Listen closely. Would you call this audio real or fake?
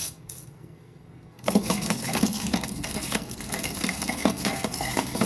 fake